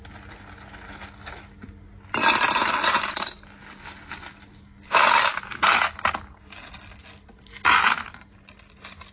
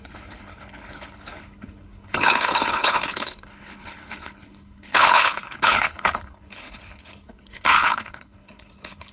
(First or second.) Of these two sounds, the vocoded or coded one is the second